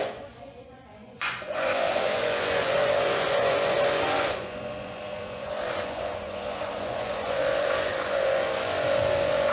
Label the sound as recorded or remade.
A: remade